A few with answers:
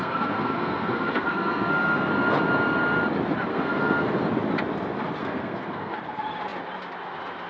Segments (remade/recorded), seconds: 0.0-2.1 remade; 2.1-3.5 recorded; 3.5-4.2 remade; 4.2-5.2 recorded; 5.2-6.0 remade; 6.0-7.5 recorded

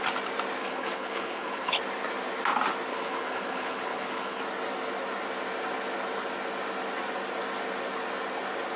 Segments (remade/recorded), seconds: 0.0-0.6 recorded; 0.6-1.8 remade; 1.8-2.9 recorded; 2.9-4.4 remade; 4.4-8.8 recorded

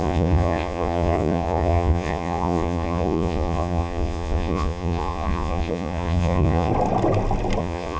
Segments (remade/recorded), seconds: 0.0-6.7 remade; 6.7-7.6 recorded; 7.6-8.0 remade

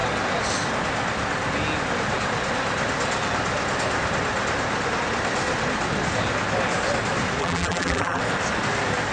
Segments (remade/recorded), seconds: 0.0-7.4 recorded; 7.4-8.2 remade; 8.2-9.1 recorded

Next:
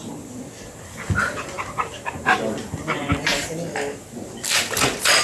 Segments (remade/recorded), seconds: 0.0-5.2 recorded

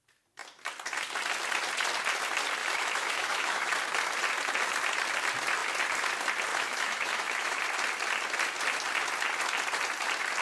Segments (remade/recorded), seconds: 0.0-2.6 recorded; 2.6-3.7 remade; 3.7-6.5 recorded; 6.5-7.6 remade; 7.6-10.4 recorded

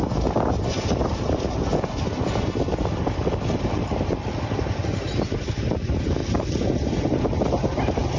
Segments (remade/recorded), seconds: 0.0-8.2 recorded